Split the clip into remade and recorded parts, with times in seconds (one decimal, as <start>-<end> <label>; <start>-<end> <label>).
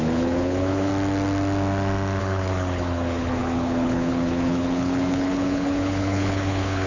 0.0-0.9 remade; 0.9-2.2 recorded; 2.2-6.9 remade